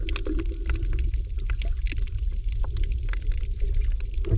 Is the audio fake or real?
real